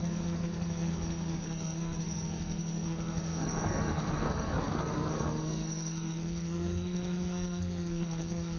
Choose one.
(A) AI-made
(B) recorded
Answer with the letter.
A